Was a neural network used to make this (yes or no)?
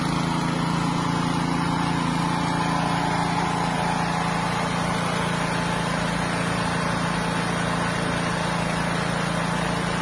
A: no